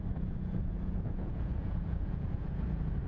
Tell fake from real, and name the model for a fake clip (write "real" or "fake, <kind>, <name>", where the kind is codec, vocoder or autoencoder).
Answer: fake, vocoder, Vocos